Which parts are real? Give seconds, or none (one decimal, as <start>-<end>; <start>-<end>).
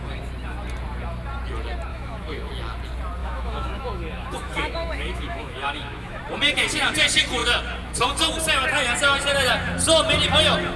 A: 0.0-1.9; 2.5-3.2; 6.2-10.8